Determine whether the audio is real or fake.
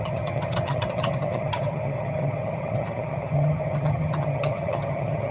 fake